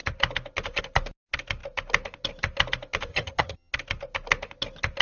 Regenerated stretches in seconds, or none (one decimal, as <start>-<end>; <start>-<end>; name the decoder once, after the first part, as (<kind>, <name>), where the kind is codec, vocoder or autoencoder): 3.1-3.7 (vocoder, HiFi-GAN)